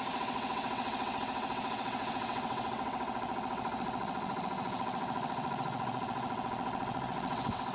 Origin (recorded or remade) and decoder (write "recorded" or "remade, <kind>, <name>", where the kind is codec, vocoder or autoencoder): remade, vocoder, WaveNeXt